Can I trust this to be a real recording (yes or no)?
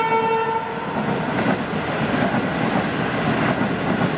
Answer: yes